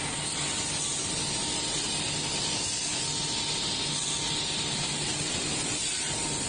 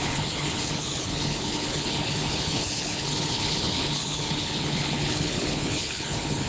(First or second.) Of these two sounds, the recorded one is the first